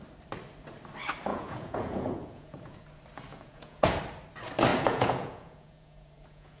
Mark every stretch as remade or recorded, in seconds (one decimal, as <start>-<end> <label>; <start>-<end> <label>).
0.0-1.3 recorded; 1.3-2.8 remade; 2.8-3.3 recorded; 3.3-4.0 remade; 4.0-4.7 recorded; 4.7-6.6 remade